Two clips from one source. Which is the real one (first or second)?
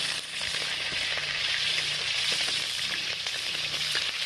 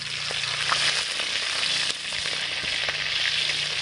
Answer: second